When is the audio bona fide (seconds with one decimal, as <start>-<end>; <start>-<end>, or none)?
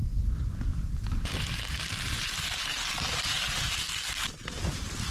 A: 0.0-0.7; 2.2-5.1